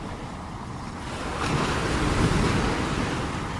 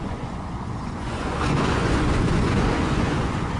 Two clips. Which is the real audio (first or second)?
first